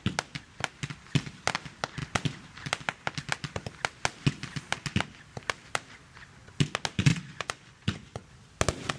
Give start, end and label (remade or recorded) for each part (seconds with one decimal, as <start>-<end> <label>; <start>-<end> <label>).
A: 0.0-7.1 recorded; 7.1-8.3 remade; 8.3-9.0 recorded